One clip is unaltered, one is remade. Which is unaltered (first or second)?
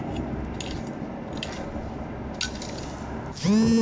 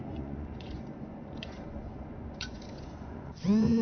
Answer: first